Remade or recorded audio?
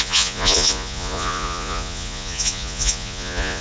remade